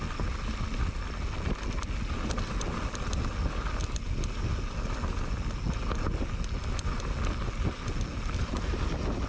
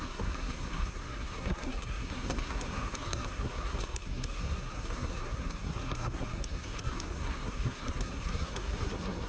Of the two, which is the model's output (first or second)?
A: second